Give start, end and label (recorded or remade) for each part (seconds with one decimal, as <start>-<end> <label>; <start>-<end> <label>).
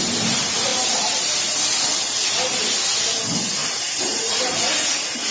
0.0-3.6 recorded; 3.6-4.5 remade; 4.5-5.3 recorded